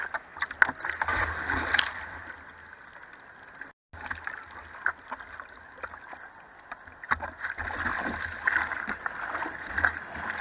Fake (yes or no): no